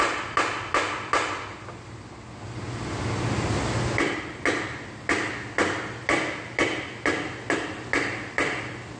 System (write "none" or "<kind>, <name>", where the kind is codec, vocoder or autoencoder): none